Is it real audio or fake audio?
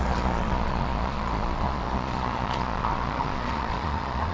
fake